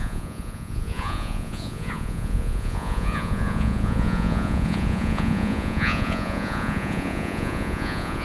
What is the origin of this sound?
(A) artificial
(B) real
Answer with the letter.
A